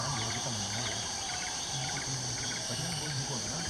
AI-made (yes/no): yes